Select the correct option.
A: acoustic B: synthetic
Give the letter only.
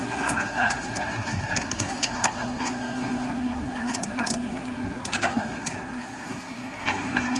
B